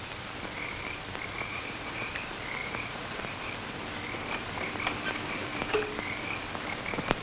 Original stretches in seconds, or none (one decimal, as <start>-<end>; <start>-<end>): 0.0-1.3; 2.1-2.6; 3.2-7.2